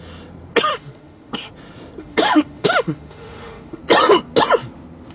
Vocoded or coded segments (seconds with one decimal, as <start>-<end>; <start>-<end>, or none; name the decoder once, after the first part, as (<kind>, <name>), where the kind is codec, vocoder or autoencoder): 0.7-1.5 (autoencoder, DAC-VAE); 2.0-3.8